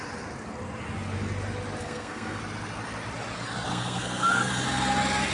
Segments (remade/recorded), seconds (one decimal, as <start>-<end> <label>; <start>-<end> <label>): 0.0-1.8 recorded; 1.8-2.4 remade; 2.4-3.7 recorded; 3.7-4.5 remade; 4.5-5.3 recorded